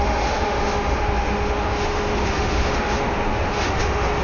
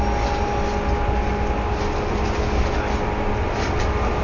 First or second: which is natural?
second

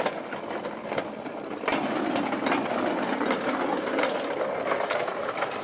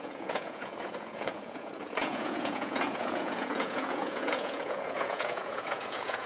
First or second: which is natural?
first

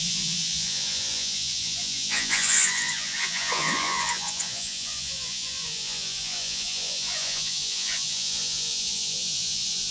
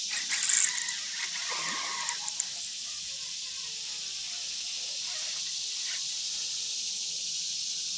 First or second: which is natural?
second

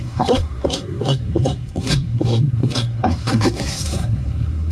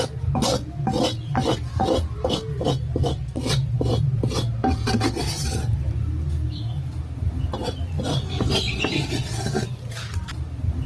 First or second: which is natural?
second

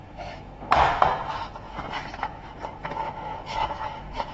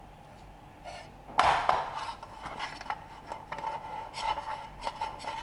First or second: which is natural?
second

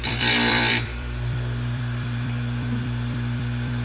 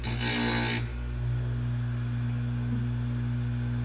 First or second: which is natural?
second